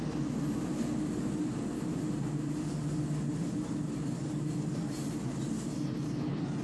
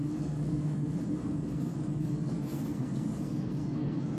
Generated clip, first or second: second